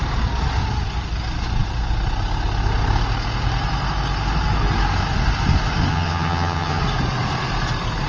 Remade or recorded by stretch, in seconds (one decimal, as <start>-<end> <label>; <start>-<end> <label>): 0.0-5.9 recorded; 5.9-6.8 remade; 6.8-8.1 recorded